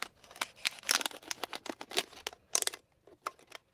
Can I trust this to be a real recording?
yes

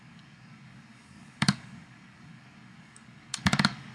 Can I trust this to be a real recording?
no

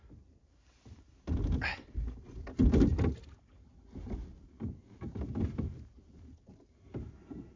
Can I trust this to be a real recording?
yes